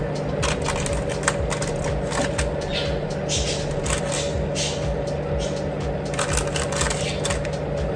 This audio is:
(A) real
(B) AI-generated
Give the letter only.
A